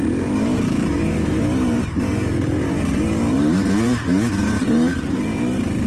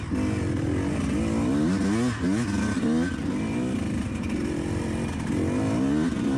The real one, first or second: second